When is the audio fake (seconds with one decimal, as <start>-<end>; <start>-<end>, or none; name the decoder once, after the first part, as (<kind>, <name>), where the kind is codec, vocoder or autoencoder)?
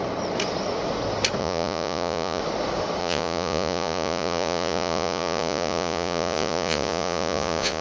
1.4-2.4 (vocoder, Vocos); 3.0-7.8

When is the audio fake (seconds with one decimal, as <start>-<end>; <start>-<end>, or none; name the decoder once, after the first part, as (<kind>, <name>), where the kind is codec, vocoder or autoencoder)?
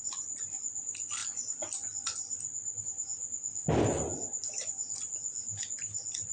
none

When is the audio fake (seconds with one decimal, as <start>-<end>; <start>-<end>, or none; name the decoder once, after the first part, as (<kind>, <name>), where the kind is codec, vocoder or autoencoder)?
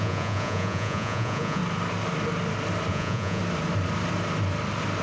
0.0-1.6 (vocoder, Vocos); 2.9-3.4